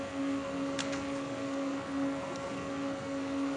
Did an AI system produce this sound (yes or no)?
yes